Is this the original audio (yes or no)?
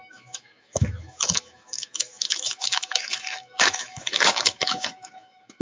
no